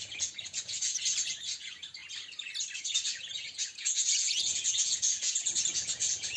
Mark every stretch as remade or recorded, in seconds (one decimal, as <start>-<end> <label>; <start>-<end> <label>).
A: 0.0-2.0 remade; 2.0-2.8 recorded; 2.8-6.4 remade